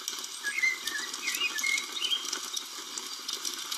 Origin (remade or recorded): recorded